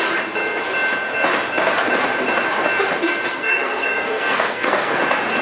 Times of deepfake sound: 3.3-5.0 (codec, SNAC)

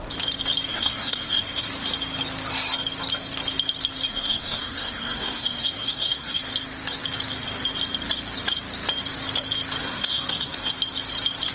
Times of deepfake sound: 0.7-1.7 (codec, SNAC); 4.1-6.4; 9.8-10.7

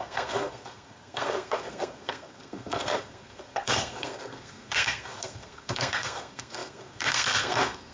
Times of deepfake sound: 0.0-7.9 (codec, SNAC)

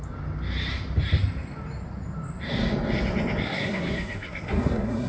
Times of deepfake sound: 3.4-5.1 (codec, SNAC)

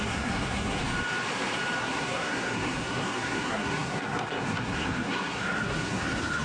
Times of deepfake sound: 0.0-0.8 (codec, SNAC); 1.8-6.4

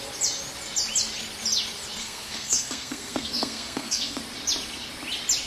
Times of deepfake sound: 2.0-4.2 (codec, SNAC)

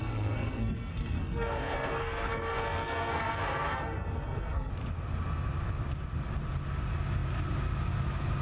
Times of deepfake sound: 0.0-4.7 (codec, SNAC)